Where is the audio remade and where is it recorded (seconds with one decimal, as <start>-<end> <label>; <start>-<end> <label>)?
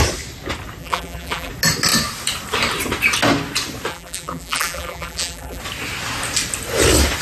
0.0-0.8 recorded; 0.8-1.5 remade; 1.5-3.9 recorded; 3.9-5.6 remade; 5.6-7.2 recorded